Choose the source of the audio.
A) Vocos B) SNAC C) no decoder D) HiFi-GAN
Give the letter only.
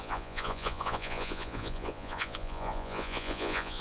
A